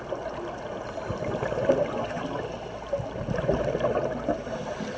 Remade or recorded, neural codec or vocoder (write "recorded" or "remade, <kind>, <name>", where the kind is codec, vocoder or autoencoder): recorded